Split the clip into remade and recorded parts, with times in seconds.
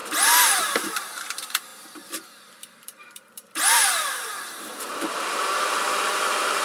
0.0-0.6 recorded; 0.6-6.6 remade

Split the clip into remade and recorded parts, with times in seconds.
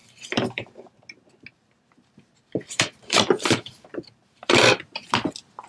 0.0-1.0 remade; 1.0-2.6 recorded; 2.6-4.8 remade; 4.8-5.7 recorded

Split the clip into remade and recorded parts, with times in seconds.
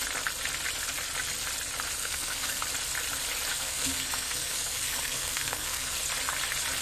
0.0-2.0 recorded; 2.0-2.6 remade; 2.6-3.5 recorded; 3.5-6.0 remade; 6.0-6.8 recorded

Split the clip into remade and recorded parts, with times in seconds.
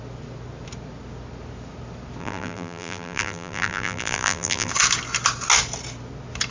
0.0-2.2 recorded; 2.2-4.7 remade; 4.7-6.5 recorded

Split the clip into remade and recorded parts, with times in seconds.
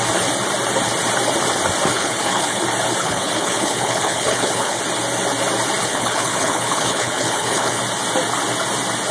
0.0-1.9 recorded; 1.9-2.6 remade; 2.6-3.0 recorded; 3.0-4.8 remade; 4.8-5.8 recorded; 5.8-7.8 remade; 7.8-9.1 recorded